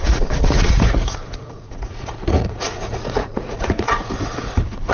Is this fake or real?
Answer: fake